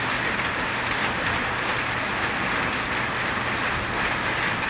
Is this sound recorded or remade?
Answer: recorded